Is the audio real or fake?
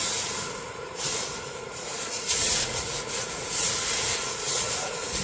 fake